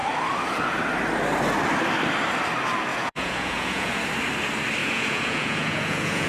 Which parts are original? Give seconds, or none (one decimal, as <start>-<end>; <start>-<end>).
0.0-2.9; 4.0-4.8